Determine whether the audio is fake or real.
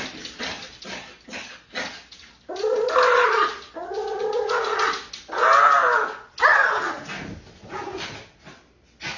real